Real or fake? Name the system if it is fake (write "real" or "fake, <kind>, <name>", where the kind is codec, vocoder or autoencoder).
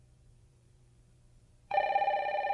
fake, vocoder, Vocos